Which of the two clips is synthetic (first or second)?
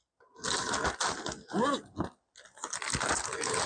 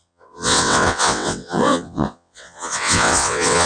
second